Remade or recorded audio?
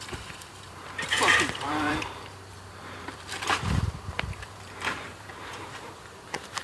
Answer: remade